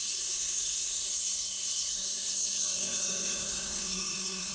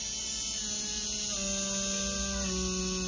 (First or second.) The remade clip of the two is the first